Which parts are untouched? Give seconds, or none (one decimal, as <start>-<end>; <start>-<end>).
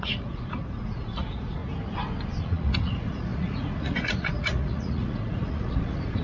1.6-2.4